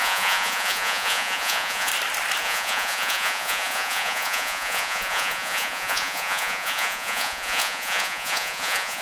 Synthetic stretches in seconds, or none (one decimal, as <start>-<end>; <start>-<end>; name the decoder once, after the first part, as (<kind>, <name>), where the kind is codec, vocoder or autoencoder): 0.0-1.9 (vocoder, Vocos); 2.4-9.0